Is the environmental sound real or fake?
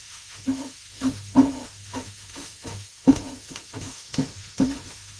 fake